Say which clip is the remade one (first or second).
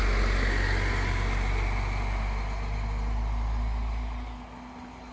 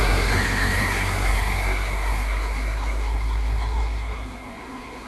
second